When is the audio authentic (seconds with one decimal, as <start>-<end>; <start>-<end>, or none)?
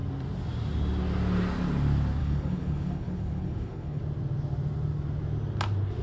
0.0-2.2; 4.0-6.0